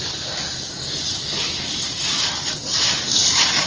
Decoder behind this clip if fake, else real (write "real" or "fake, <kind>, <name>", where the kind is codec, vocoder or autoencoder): real